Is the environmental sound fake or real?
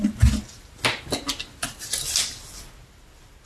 real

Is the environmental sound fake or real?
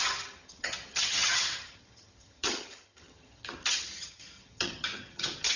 fake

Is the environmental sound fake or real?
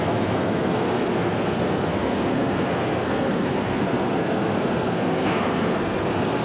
fake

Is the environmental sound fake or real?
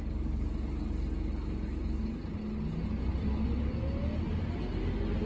real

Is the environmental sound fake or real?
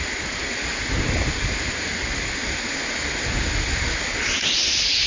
real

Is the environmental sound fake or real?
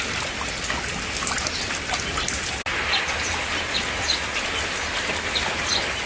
real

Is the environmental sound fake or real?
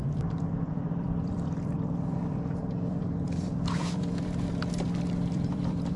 fake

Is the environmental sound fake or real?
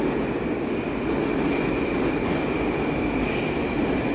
real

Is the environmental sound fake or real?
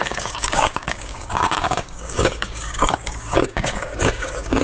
fake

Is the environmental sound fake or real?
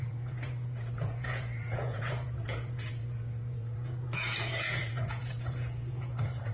fake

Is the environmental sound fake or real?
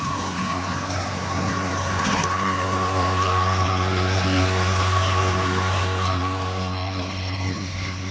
fake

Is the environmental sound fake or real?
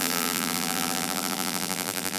fake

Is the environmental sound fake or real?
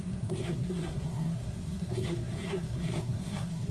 fake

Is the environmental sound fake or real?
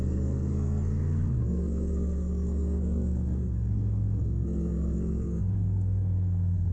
fake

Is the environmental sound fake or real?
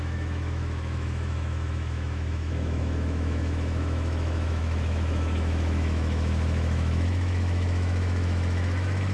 fake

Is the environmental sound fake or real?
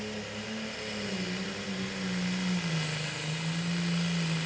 real